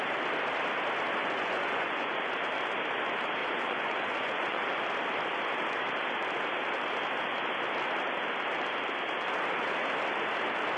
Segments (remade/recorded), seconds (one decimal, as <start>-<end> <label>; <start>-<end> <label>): 0.0-1.2 recorded; 1.2-2.3 remade; 2.3-3.4 recorded; 3.4-4.8 remade; 4.8-10.8 recorded